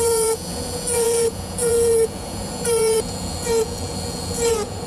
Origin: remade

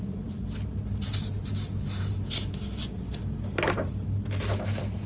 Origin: recorded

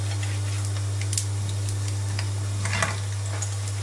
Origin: recorded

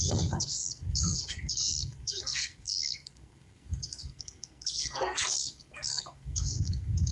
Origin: remade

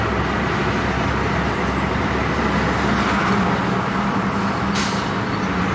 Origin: recorded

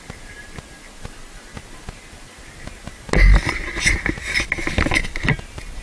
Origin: recorded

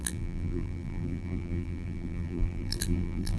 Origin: remade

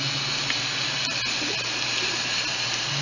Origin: recorded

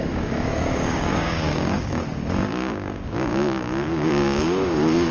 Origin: remade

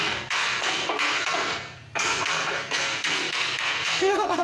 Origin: remade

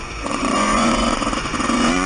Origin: remade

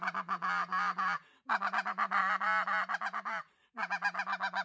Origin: recorded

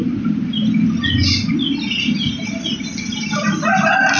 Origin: recorded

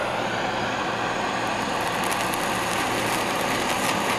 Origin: recorded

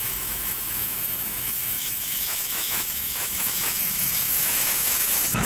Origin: remade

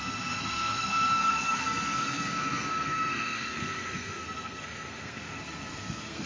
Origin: remade